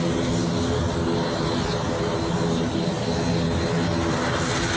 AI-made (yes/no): no